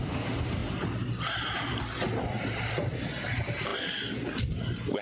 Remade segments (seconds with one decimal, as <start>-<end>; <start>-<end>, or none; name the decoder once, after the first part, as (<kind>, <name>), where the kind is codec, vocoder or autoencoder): none